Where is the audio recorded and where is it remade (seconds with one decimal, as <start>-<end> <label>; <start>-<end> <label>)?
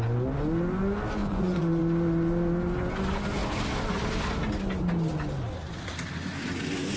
0.0-1.2 recorded; 1.2-1.8 remade; 1.8-7.0 recorded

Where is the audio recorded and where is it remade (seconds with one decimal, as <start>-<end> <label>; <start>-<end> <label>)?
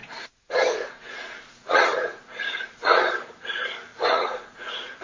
0.0-3.0 remade; 3.0-3.9 recorded; 3.9-5.0 remade